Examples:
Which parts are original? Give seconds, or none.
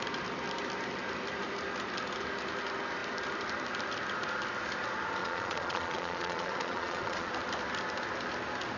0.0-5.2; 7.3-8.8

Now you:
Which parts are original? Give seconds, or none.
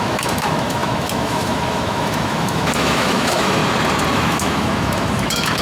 3.6-4.1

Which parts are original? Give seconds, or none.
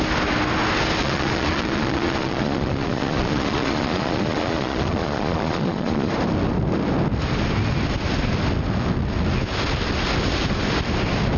0.0-1.0; 6.1-11.4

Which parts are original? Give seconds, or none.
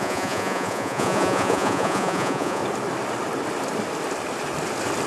2.6-5.1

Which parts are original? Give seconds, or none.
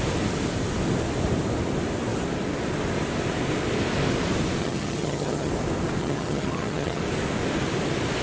0.0-4.6; 5.5-6.0; 7.0-8.2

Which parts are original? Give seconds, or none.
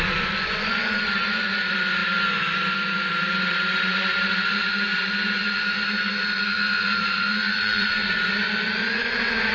none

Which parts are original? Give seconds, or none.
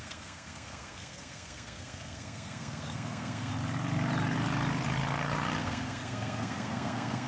3.5-5.6